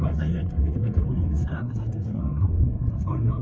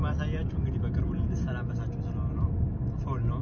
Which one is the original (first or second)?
second